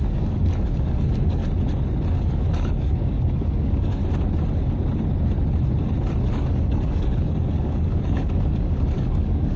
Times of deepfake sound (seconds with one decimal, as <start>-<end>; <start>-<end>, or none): 0.0-1.4; 2.1-4.0; 6.3-9.6

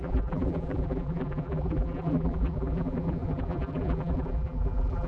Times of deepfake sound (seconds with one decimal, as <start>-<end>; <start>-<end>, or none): 0.0-5.1

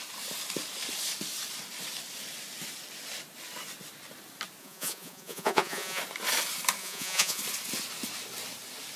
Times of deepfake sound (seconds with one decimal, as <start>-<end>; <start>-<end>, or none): 4.6-6.0; 6.8-7.4